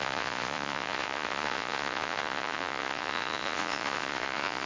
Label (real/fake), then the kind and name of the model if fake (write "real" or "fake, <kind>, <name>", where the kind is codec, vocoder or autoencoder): fake, vocoder, Vocos